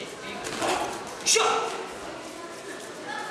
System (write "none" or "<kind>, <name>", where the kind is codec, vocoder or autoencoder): none